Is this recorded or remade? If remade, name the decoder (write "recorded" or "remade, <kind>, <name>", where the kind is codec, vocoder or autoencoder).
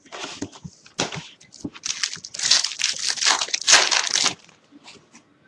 recorded